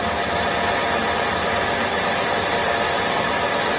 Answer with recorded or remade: recorded